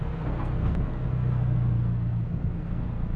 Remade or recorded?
remade